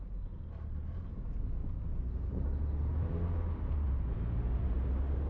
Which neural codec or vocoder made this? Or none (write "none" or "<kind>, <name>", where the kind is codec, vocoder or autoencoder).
none